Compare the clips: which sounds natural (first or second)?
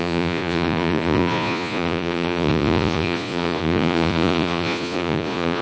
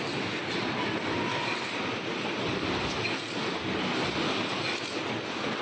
second